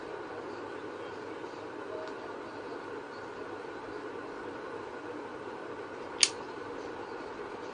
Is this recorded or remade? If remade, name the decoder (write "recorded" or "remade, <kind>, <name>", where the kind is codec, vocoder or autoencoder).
recorded